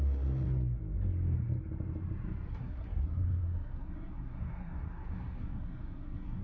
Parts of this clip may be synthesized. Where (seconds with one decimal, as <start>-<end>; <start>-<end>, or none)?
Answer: 2.5-6.4